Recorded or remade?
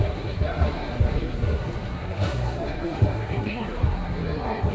remade